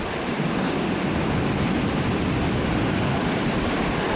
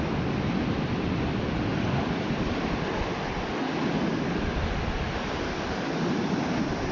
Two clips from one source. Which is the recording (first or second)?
first